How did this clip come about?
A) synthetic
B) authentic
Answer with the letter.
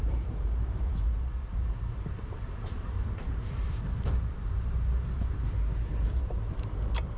A